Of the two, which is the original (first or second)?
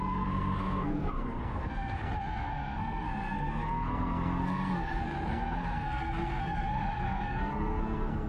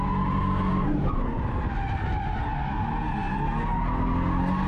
second